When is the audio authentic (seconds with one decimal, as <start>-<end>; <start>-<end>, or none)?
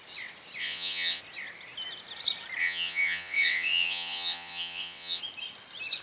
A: 0.0-0.6; 1.2-2.6; 5.2-6.0